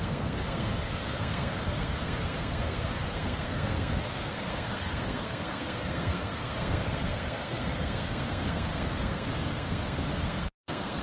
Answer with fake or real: fake